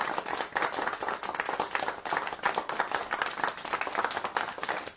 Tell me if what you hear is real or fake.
real